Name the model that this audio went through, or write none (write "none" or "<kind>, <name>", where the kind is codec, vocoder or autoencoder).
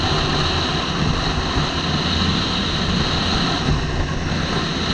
none